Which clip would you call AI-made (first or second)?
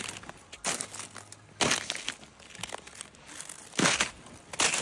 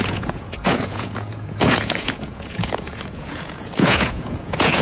second